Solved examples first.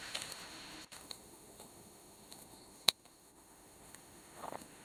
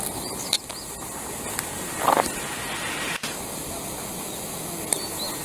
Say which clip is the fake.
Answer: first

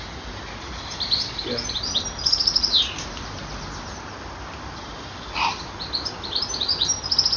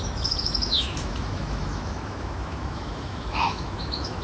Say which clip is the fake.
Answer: second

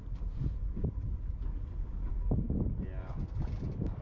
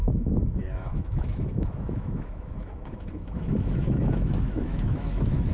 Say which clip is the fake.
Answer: second